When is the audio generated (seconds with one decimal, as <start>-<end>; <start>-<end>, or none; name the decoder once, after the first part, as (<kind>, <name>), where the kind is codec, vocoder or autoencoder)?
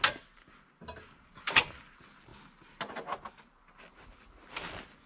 none